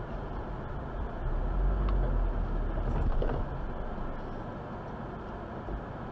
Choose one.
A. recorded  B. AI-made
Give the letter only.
A